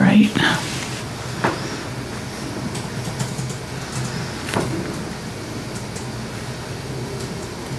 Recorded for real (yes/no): yes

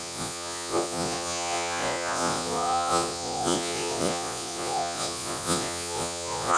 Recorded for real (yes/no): no